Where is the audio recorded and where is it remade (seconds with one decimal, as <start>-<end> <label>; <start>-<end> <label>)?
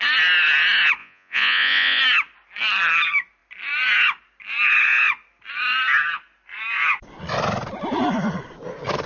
0.0-1.0 recorded; 1.0-2.0 remade; 2.0-9.1 recorded